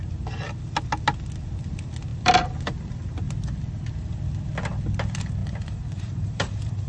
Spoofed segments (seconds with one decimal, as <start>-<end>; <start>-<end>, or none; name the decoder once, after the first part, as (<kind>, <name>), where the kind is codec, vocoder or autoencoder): 5.4-6.9 (vocoder, BigVGAN v2)